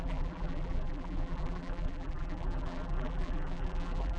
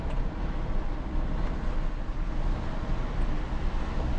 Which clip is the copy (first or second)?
first